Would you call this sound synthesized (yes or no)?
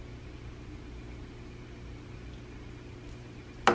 no